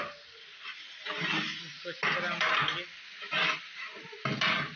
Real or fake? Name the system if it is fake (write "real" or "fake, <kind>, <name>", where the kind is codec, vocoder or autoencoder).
real